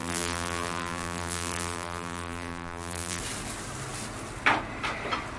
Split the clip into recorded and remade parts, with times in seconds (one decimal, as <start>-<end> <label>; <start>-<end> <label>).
0.0-3.2 remade; 3.2-5.4 recorded